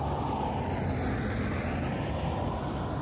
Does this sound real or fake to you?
real